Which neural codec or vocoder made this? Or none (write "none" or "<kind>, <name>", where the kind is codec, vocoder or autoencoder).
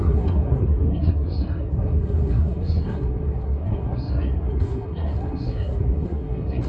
codec, SNAC